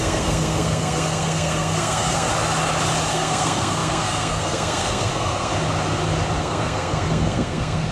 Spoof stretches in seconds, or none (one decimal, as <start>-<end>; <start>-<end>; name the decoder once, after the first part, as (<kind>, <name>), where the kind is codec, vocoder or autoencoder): 0.0-2.3 (codec, SNAC); 3.1-5.5; 6.4-7.9

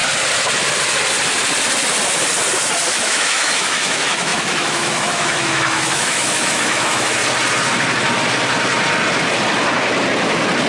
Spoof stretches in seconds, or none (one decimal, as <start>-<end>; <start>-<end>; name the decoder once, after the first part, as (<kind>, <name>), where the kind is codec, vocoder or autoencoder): 2.9-7.2 (autoencoder, DAC-VAE)

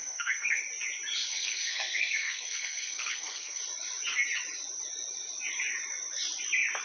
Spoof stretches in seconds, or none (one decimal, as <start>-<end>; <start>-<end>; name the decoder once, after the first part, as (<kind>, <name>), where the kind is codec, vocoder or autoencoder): 0.0-0.6 (codec, SNAC); 1.3-3.6

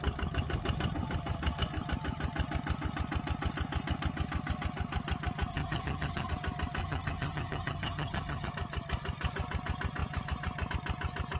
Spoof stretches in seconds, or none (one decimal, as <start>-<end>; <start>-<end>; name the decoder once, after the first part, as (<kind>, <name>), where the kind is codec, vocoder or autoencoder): 5.5-6.3 (vocoder, HiFi-GAN); 6.8-8.5

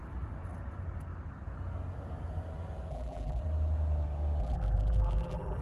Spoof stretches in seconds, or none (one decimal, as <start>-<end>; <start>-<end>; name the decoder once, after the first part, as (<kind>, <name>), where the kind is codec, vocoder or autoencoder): 2.9-3.4 (vocoder, BigVGAN v2); 4.4-5.6

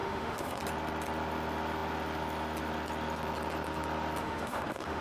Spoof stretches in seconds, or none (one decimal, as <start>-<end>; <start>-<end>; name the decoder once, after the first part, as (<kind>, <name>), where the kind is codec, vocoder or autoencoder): 0.0-0.6 (autoencoder, DAC-VAE); 4.2-5.0

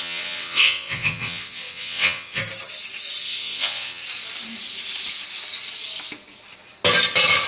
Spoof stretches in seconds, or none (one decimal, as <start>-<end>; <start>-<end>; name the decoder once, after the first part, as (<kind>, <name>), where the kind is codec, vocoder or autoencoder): 0.0-2.4 (vocoder, WaveNeXt); 3.2-4.0

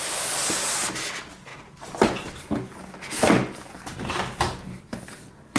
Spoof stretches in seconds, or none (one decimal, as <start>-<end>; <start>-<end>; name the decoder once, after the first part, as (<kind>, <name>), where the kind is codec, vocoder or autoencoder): none